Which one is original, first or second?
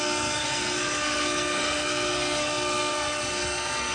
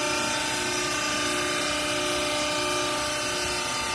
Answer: second